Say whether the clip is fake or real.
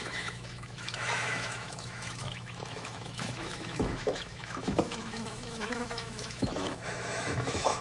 fake